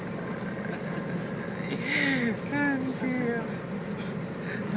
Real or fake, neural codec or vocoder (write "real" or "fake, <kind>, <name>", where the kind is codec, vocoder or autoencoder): real